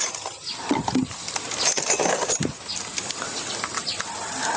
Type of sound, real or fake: real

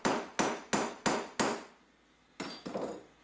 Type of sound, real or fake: real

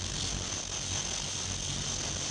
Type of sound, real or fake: real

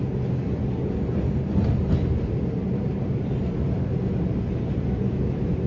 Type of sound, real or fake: real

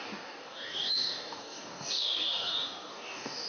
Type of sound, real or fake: fake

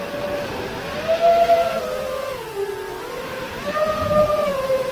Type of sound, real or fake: real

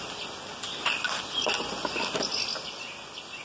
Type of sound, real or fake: real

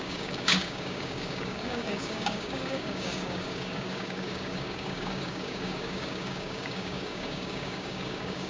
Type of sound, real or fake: fake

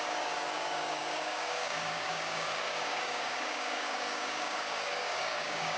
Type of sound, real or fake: fake